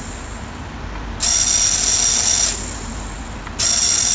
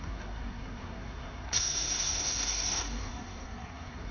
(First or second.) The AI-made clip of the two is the second